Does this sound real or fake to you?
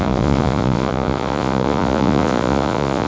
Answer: fake